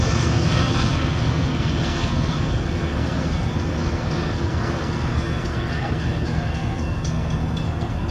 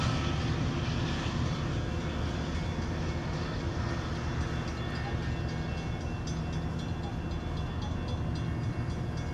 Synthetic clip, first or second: first